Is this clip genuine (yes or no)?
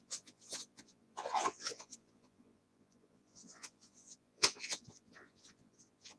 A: no